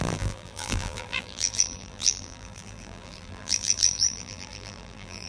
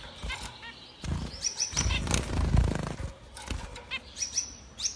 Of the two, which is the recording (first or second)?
second